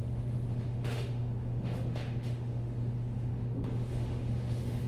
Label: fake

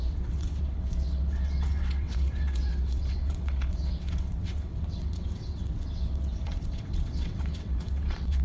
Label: fake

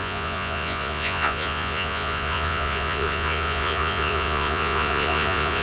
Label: fake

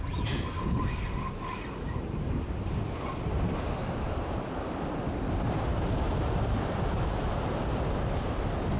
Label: real